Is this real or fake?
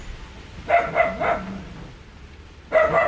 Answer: real